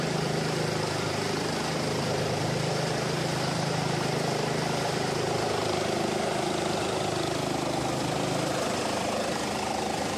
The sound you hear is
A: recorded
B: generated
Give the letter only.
B